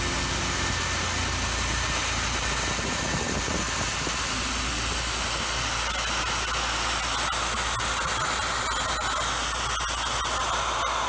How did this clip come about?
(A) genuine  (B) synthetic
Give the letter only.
A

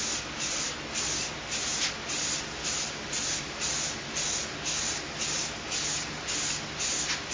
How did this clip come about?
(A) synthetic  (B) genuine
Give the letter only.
B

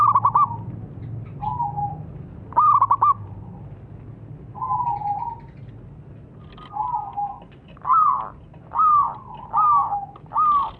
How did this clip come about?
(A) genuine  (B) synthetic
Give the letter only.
A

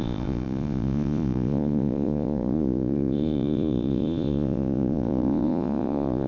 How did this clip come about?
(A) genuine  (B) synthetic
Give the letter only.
B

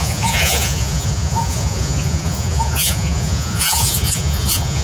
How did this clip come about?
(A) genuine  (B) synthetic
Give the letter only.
B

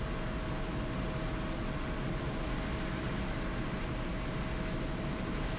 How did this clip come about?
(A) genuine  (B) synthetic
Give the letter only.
A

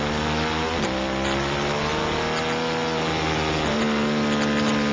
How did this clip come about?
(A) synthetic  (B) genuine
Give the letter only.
B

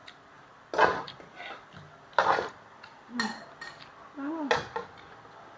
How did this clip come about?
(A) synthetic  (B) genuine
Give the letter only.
B